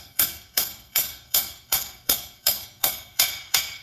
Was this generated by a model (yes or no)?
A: yes